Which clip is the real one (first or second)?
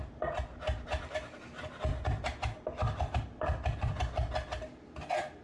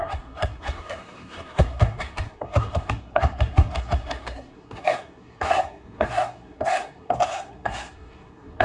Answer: first